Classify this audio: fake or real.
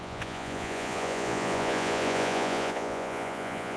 fake